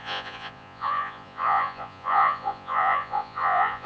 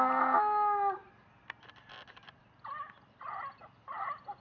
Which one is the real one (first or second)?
second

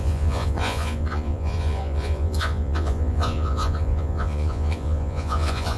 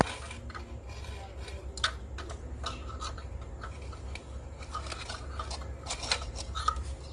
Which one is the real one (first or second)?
second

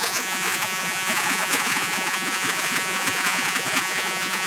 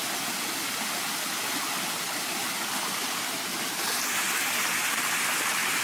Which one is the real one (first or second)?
second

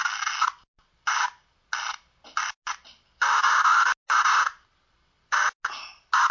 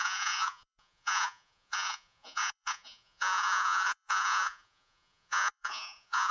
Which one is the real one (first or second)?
first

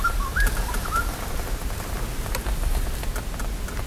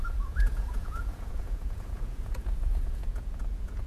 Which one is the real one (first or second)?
first